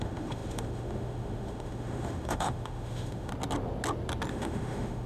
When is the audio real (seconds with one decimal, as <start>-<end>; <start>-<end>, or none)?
3.3-4.3